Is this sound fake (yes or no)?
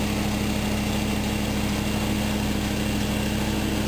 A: no